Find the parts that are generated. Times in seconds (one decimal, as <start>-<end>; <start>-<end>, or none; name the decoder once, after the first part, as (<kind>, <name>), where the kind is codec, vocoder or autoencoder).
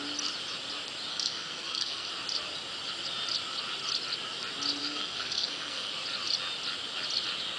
1.1-2.1 (codec, SNAC); 4.8-5.9